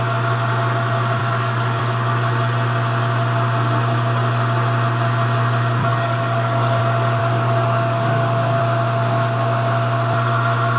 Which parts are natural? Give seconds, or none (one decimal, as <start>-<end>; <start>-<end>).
0.0-1.2; 1.8-5.8; 6.8-7.2; 8.6-10.8